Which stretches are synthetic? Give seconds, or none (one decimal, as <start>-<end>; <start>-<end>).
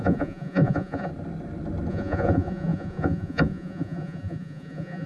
0.0-1.1; 1.9-5.1